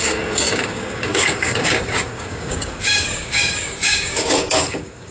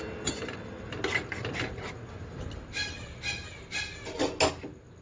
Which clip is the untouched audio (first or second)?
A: second